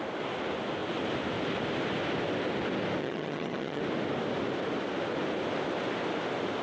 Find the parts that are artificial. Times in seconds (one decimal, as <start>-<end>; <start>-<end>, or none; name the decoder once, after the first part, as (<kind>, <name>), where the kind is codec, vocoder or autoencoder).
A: 3.0-3.8 (vocoder, HiFi-GAN)